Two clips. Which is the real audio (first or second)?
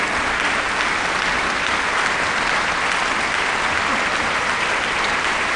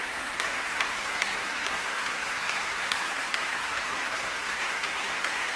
first